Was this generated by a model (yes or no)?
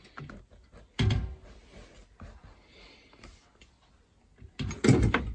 no